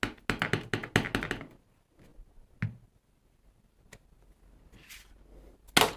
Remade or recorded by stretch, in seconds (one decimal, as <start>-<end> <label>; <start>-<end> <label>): 0.0-6.0 recorded